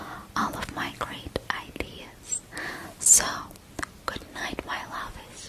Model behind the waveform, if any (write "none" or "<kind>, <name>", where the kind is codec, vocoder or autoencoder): none